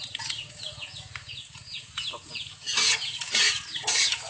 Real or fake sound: fake